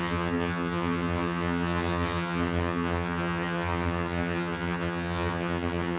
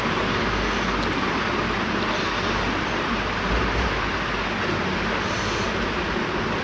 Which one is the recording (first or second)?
second